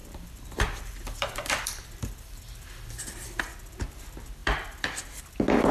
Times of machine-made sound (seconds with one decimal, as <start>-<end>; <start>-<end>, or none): 0.0-3.4; 4.4-5.2